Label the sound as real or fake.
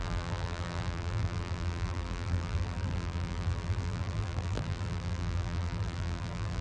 fake